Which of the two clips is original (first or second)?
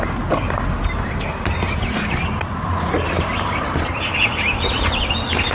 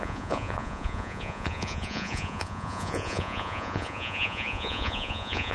first